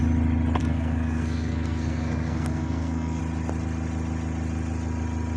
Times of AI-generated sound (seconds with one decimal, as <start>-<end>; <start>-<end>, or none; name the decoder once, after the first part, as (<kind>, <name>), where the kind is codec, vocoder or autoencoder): 0.6-3.2 (codec, SNAC)